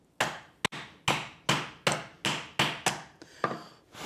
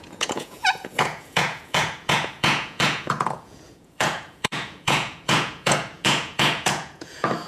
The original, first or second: first